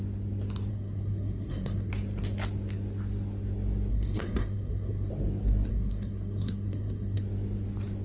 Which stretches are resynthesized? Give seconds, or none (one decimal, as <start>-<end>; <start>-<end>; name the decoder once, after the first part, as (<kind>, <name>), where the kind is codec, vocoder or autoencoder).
0.7-1.9 (codec, SNAC); 3.9-5.1; 5.7-7.2